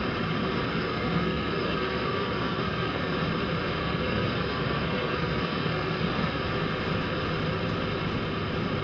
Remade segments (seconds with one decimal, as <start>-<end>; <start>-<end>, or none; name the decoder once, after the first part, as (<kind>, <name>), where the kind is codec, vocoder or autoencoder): 0.7-3.1 (codec, SNAC); 3.8-6.4